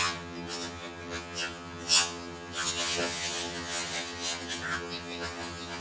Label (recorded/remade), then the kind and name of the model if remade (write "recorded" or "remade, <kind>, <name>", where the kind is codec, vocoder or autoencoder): remade, vocoder, HiFi-GAN